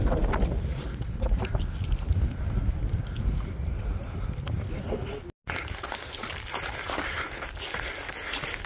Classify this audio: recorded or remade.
recorded